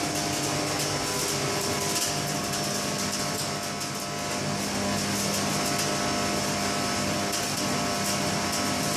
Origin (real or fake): real